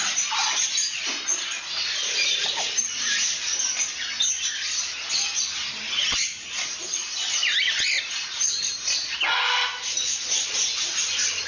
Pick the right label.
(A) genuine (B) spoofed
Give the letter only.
A